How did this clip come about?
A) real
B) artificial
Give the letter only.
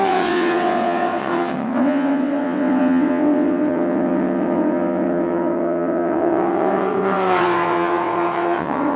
B